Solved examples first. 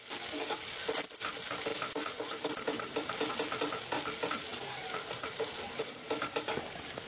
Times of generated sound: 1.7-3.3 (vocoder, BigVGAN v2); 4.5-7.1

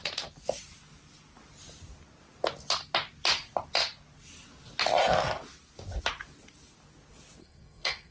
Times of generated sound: 7.4-8.1 (codec, SNAC)

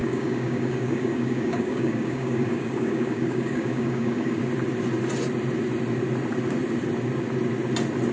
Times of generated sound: 0.0-4.4 (codec, DAC)

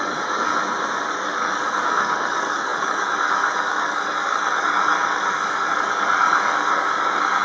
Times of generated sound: 0.0-0.5 (codec, DAC); 1.1-7.4

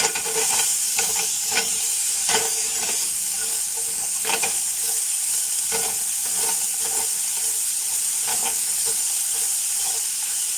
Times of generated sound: 0.7-5.6 (codec, DAC); 8.3-9.4

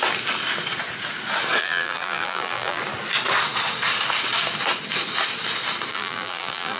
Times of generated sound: 1.6-2.8 (vocoder, BigVGAN v2); 5.9-6.8

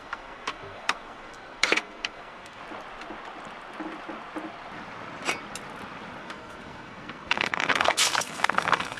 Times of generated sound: 0.0-2.6 (codec, SNAC); 6.2-9.0

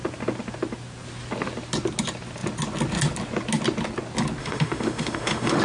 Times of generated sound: 4.4-5.6 (autoencoder, DAC-VAE)